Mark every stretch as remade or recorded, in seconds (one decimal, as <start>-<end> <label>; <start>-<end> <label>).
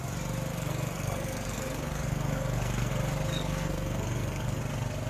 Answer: 0.0-0.5 recorded; 0.5-2.9 remade; 2.9-3.3 recorded; 3.3-4.6 remade; 4.6-5.1 recorded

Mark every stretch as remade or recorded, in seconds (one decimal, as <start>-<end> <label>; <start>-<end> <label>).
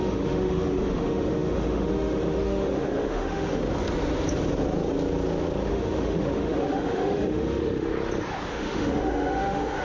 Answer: 0.0-3.6 remade; 3.6-5.7 recorded; 5.7-7.9 remade; 7.9-8.5 recorded; 8.5-9.8 remade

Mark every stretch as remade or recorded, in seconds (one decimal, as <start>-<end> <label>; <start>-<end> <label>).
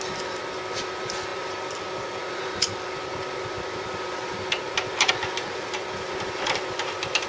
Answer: 0.0-1.3 recorded; 1.3-5.1 remade; 5.1-7.3 recorded